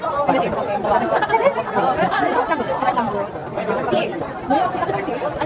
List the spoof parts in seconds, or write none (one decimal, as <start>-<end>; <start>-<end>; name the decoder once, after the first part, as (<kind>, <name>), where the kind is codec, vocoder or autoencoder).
none